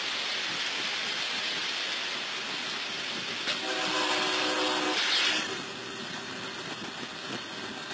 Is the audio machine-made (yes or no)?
no